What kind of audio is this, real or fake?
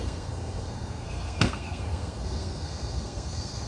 fake